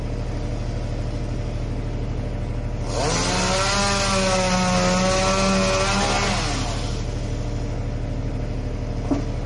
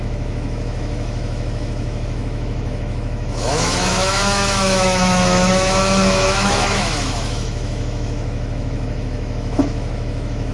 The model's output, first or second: second